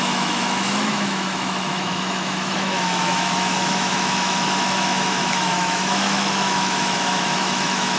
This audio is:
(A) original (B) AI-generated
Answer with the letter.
B